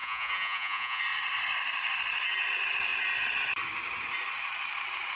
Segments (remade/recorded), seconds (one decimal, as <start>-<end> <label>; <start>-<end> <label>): 0.0-1.0 remade; 1.0-5.2 recorded